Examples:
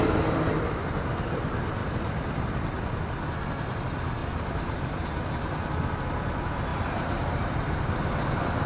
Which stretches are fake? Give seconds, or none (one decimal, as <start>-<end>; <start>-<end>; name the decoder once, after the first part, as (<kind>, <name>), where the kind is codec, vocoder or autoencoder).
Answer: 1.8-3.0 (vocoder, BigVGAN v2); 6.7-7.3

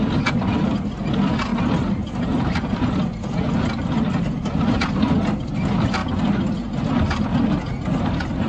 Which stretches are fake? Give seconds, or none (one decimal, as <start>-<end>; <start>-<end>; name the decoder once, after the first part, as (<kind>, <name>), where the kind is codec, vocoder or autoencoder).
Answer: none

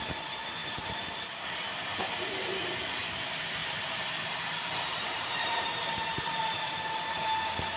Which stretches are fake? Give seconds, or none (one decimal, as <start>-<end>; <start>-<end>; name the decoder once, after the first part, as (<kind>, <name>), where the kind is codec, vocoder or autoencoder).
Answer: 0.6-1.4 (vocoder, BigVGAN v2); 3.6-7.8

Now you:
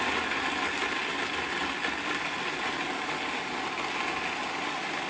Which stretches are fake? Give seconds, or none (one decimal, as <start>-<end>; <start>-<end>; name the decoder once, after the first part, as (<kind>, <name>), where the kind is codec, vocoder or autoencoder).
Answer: none

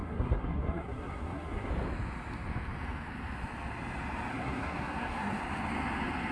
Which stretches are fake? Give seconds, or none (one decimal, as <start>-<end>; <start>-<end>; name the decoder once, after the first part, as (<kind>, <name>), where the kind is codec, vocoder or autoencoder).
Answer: 0.0-1.7 (codec, SNAC); 4.3-5.4